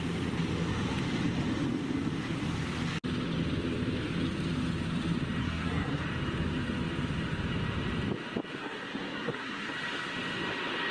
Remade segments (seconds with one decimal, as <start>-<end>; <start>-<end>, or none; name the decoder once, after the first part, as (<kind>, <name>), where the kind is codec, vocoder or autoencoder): 5.4-6.0 (codec, SNAC); 8.6-9.7